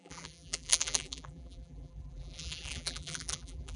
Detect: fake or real fake